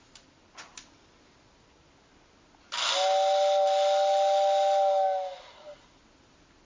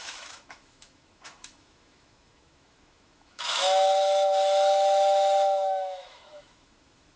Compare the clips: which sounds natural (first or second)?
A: first